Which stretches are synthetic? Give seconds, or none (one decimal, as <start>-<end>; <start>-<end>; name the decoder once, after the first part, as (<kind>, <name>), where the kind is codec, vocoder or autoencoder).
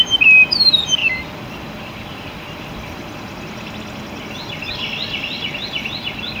none